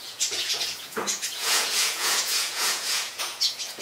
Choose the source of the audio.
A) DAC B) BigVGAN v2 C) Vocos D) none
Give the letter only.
C